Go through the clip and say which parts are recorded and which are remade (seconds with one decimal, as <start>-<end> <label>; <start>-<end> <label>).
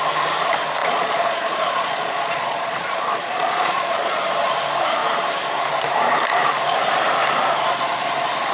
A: 0.0-0.8 recorded; 0.8-4.2 remade; 4.2-8.5 recorded